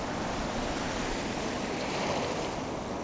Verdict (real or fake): real